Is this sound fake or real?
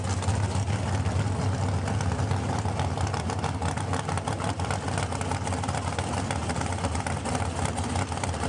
real